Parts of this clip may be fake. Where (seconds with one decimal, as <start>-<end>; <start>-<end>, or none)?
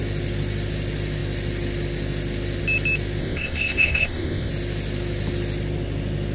3.2-4.5